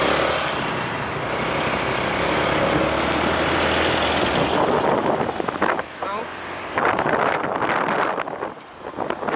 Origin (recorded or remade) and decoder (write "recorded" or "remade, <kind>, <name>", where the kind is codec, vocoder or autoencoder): recorded